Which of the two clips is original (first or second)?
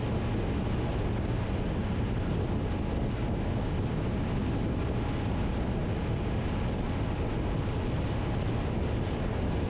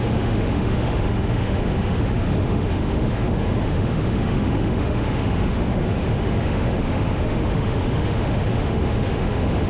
first